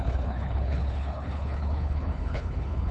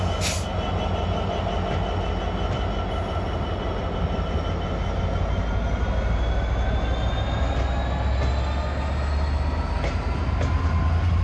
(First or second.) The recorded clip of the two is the second